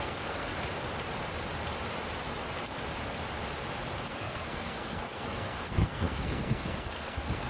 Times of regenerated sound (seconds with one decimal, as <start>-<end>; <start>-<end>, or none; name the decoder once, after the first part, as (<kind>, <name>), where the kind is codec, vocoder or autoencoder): 0.0-0.5 (codec, SNAC); 4.1-7.5